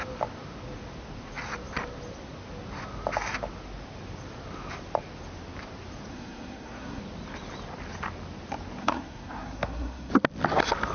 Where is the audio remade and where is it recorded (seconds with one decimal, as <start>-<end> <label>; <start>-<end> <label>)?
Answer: 0.0-6.1 recorded; 6.1-7.0 remade; 7.0-8.8 recorded; 8.8-10.1 remade; 10.1-10.9 recorded